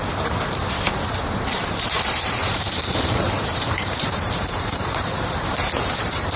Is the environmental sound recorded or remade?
remade